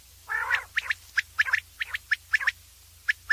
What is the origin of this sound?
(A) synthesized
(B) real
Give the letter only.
B